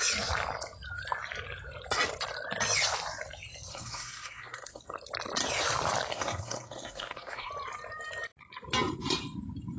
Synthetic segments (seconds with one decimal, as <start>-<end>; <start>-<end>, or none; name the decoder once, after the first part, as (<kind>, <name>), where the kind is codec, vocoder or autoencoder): 3.7-4.8 (codec, SNAC); 6.1-7.5